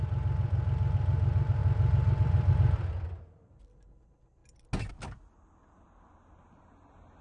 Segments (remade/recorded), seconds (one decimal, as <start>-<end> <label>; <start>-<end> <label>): 0.0-1.6 recorded; 1.6-2.5 remade; 2.5-7.2 recorded